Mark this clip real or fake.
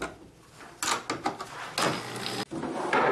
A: real